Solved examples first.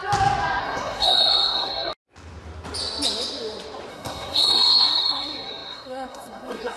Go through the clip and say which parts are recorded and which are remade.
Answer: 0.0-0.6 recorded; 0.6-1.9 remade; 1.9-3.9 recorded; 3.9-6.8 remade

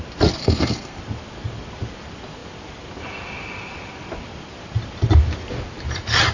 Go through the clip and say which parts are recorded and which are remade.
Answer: 0.0-0.4 recorded; 0.4-1.0 remade; 1.0-6.3 recorded

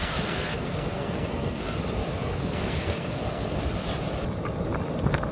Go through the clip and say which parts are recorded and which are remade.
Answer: 0.0-1.8 remade; 1.8-2.2 recorded; 2.2-3.6 remade; 3.6-5.3 recorded

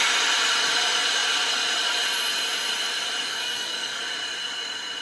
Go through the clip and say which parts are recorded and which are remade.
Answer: 0.0-3.3 recorded; 3.3-4.0 remade; 4.0-5.0 recorded

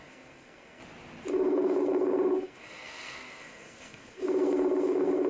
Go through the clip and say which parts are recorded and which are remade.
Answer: 0.0-0.8 remade; 0.8-1.3 recorded; 1.3-5.3 remade

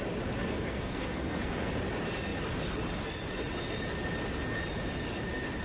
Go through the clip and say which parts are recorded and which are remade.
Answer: 0.0-0.4 recorded; 0.4-1.8 remade; 1.8-5.6 recorded

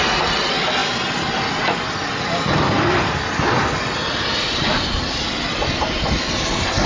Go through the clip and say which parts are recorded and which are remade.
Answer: 0.0-6.9 recorded